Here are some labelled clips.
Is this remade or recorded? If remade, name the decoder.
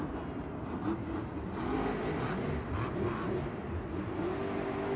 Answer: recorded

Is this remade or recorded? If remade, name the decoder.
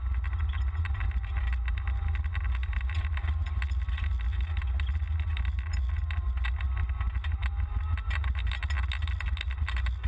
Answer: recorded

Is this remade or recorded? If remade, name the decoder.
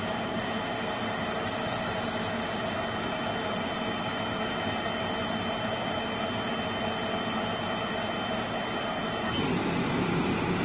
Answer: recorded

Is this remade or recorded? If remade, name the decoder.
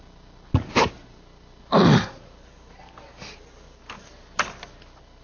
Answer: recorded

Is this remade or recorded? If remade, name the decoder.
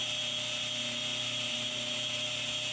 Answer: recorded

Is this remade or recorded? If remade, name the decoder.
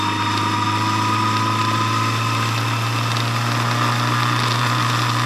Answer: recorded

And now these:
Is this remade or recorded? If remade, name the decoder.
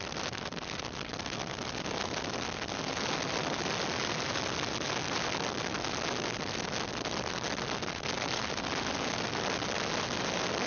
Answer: recorded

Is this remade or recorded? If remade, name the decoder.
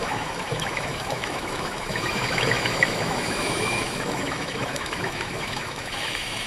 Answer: remade, autoencoder, DAC-VAE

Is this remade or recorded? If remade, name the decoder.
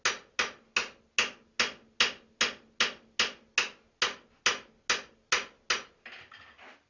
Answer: recorded